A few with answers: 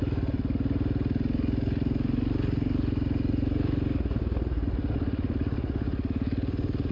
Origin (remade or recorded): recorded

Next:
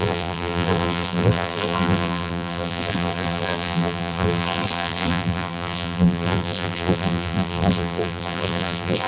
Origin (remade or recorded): remade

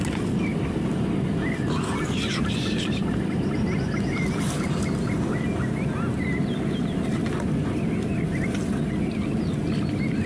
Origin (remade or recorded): recorded